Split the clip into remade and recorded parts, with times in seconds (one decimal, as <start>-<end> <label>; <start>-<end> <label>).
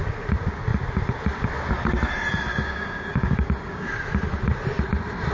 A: 0.0-2.6 recorded; 2.6-3.9 remade; 3.9-5.3 recorded